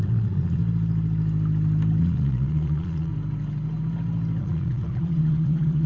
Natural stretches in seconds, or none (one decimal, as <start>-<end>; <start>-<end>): 0.6-2.0; 3.1-4.4